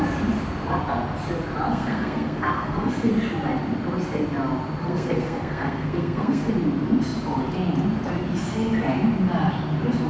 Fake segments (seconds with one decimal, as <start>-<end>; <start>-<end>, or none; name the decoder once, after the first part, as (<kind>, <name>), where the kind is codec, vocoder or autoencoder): 1.7-3.1 (codec, SNAC); 4.8-6.5